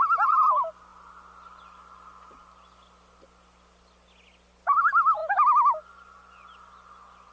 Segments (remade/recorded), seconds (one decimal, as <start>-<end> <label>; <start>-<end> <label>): 0.0-7.3 recorded